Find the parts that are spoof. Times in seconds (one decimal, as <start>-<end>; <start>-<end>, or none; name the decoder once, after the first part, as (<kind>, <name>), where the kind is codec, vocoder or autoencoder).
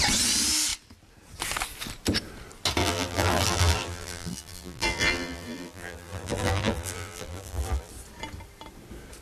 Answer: 2.8-7.9 (vocoder, BigVGAN v2)